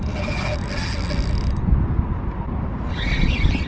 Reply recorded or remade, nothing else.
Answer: recorded